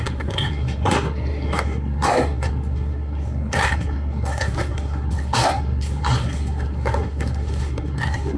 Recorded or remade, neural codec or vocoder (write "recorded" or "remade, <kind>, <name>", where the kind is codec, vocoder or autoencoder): remade, codec, SNAC